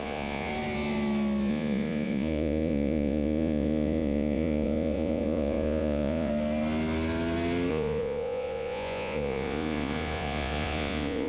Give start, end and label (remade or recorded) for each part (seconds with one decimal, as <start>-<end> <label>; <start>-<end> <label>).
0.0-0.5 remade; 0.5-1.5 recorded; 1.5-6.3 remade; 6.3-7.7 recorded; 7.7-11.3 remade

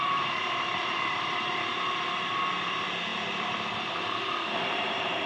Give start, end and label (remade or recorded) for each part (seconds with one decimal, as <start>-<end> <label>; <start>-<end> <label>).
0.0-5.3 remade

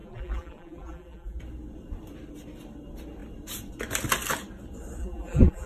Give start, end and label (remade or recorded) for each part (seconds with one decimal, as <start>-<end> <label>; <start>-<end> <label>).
0.0-1.4 remade; 1.4-5.0 recorded; 5.0-5.7 remade